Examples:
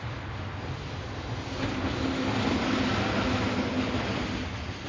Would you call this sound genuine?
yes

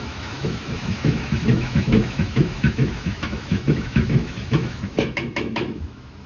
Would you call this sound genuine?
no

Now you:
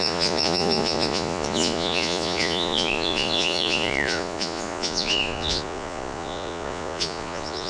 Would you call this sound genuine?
no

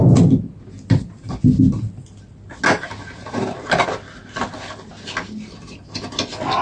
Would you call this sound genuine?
yes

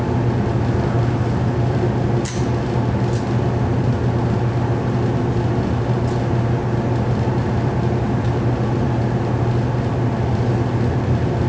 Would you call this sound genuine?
yes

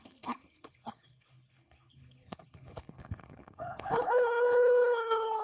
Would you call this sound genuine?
no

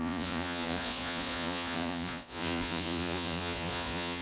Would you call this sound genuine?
no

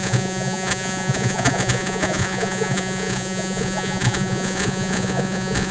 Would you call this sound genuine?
no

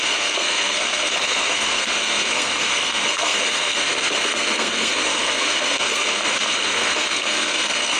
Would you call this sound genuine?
no